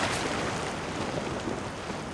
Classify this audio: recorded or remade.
recorded